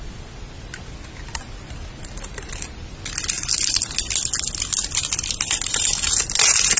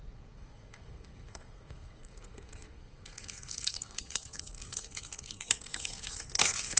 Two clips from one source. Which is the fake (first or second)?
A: second